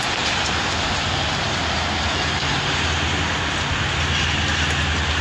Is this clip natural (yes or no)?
yes